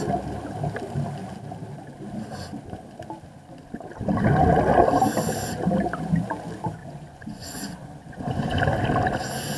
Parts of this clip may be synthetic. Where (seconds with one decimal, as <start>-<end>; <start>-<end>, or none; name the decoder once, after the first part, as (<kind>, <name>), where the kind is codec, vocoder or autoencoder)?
6.8-8.6 (vocoder, Vocos)

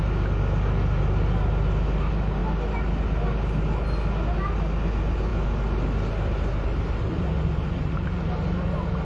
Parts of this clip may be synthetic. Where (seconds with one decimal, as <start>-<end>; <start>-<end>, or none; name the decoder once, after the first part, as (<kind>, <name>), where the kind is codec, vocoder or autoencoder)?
none

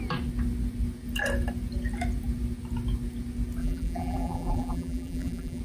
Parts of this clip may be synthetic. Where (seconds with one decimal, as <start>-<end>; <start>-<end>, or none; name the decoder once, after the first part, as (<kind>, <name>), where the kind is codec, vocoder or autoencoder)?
3.6-5.6 (vocoder, BigVGAN v2)

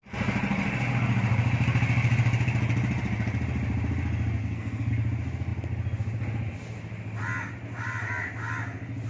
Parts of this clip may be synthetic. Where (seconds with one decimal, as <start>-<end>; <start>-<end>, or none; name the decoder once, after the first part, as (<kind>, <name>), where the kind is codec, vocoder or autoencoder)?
4.4-4.9 (codec, SNAC)

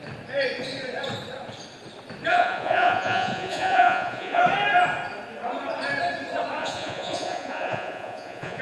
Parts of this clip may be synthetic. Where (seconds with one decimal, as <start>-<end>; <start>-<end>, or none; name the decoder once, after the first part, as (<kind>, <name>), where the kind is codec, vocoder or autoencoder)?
2.3-4.4 (vocoder, Vocos); 6.6-8.6

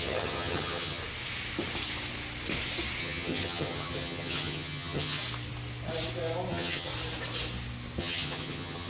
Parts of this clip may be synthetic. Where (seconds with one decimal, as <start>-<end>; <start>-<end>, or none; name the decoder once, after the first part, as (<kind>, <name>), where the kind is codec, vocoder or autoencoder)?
0.0-1.0 (vocoder, HiFi-GAN); 3.0-5.2; 6.5-6.9; 8.0-8.9

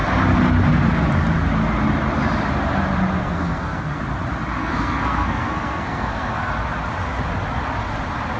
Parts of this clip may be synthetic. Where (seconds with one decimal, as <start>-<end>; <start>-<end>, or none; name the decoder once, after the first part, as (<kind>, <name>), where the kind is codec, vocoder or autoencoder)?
3.2-4.0 (codec, SNAC); 4.6-6.5